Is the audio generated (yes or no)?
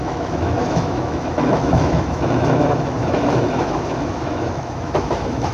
yes